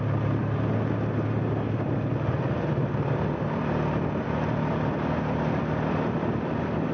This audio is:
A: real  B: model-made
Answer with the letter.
A